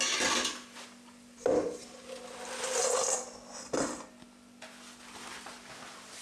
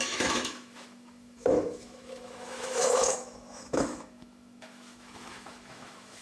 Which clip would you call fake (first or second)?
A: second